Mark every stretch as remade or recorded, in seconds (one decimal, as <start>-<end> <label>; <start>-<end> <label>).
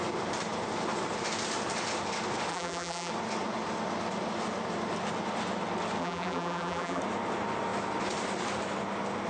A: 0.0-2.5 recorded; 2.5-3.1 remade; 3.1-6.0 recorded; 6.0-7.0 remade; 7.0-9.3 recorded